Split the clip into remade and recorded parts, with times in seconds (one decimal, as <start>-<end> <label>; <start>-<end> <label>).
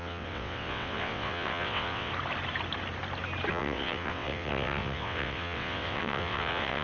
0.0-2.1 remade; 2.1-3.5 recorded; 3.5-6.8 remade